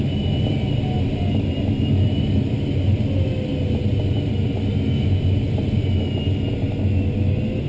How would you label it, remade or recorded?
recorded